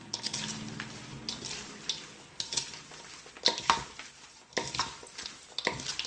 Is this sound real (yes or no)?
yes